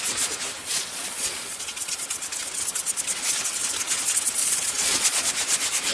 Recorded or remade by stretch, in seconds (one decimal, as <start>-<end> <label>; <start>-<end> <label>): 0.0-0.6 recorded; 0.6-2.0 remade; 2.0-4.4 recorded; 4.4-5.3 remade; 5.3-5.9 recorded